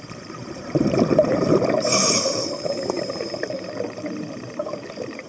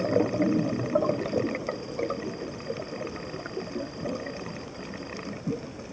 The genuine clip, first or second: second